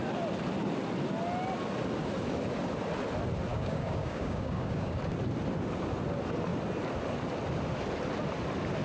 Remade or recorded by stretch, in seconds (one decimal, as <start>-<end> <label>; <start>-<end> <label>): 0.0-3.5 recorded; 3.5-5.0 remade; 5.0-8.8 recorded